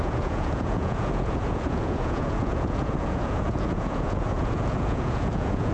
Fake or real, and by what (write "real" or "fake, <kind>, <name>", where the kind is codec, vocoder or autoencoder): fake, vocoder, Vocos